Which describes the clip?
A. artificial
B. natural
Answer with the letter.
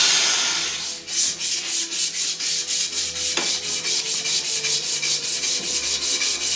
B